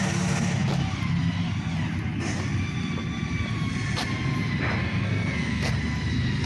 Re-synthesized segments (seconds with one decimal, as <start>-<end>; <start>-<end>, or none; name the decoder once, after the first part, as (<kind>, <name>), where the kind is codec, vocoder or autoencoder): 4.8-5.7 (codec, SNAC)

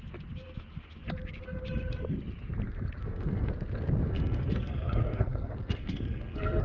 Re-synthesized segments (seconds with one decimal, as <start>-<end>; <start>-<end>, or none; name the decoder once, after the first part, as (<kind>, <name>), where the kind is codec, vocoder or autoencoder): 3.0-3.5 (codec, SNAC); 4.0-6.6

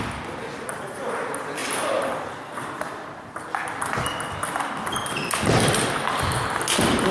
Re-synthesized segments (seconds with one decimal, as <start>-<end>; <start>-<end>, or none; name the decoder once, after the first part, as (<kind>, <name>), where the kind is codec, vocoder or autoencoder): none

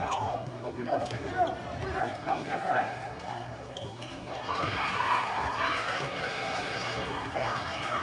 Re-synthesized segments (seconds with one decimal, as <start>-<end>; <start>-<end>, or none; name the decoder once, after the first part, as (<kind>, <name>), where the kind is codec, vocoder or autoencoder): 0.0-1.3 (codec, SNAC); 2.0-8.0

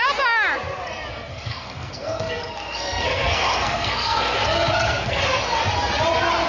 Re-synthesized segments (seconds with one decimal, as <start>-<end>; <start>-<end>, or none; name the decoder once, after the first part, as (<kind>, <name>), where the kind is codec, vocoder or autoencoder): 1.3-5.2 (codec, SNAC)

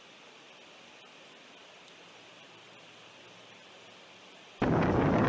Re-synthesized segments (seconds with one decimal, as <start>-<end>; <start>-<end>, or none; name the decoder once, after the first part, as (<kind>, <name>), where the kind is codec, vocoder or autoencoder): none

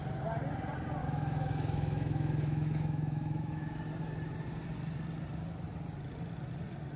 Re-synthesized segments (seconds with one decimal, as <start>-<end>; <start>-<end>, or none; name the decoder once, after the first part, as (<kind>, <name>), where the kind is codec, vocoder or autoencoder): 1.0-3.8 (autoencoder, DAC-VAE)